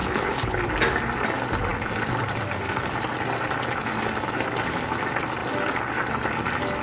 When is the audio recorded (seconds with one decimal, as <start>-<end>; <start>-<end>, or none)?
0.6-6.8